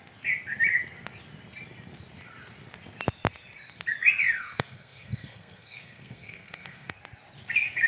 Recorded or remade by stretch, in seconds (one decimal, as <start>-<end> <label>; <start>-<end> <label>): 0.0-4.4 recorded; 4.4-7.0 remade; 7.0-7.9 recorded